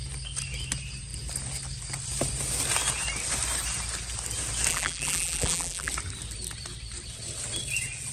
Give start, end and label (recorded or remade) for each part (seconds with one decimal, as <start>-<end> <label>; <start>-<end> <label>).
0.0-4.7 recorded; 4.7-5.9 remade; 5.9-8.1 recorded